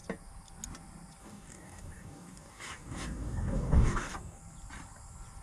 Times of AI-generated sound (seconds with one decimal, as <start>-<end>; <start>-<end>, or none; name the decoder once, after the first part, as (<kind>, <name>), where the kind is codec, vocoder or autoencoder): 1.2-4.4 (codec, DAC)